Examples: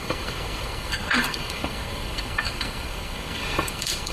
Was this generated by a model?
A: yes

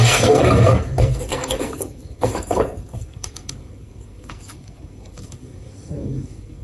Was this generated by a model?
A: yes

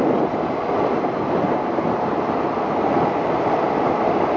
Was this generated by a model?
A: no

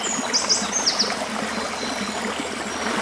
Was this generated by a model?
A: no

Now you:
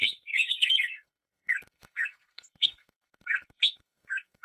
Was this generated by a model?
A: yes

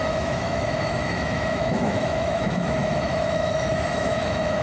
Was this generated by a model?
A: yes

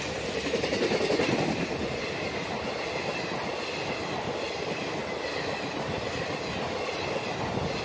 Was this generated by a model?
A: no